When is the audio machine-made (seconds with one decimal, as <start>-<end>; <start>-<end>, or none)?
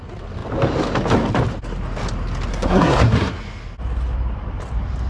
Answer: 2.5-3.3